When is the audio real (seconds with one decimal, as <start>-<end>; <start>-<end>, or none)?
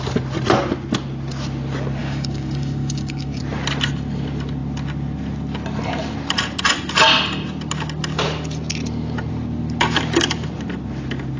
0.0-2.0; 3.4-11.4